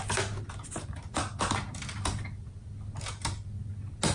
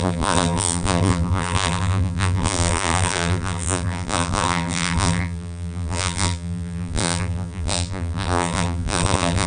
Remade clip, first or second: second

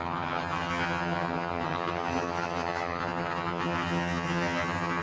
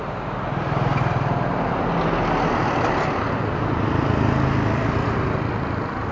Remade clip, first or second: first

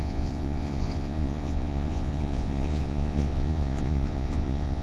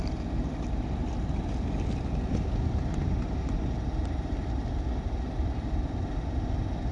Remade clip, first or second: first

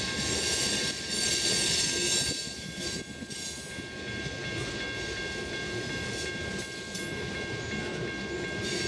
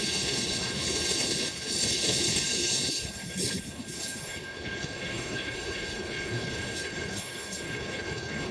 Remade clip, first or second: second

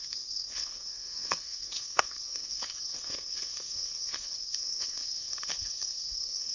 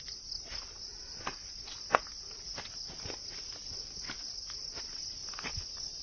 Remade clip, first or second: first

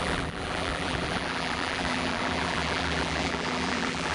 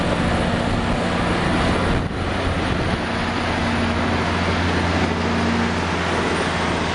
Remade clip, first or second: first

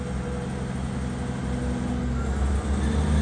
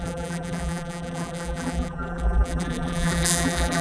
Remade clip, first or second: second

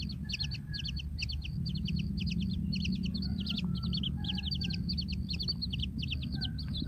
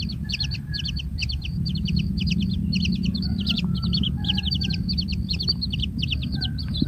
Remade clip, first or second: second